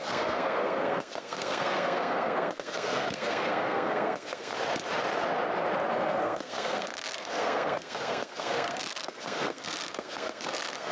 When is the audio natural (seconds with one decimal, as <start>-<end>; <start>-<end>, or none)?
4.5-5.9